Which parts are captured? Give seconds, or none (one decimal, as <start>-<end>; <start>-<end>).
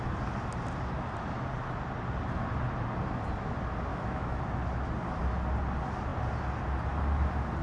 0.0-3.9; 4.4-7.6